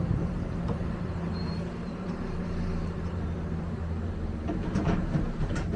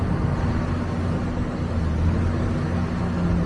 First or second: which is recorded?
second